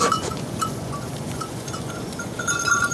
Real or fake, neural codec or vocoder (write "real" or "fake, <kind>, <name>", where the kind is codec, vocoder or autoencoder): fake, vocoder, Vocos